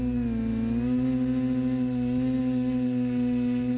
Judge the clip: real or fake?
real